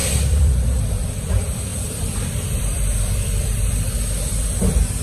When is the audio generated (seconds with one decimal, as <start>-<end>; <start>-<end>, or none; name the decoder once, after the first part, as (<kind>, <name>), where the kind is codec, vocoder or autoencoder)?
0.0-5.0 (vocoder, BigVGAN v2)